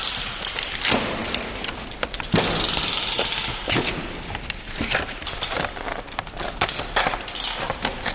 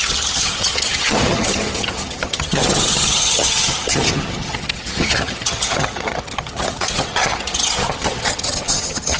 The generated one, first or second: second